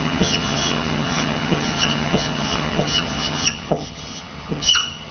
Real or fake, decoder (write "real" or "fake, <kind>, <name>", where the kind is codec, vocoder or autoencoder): fake, vocoder, HiFi-GAN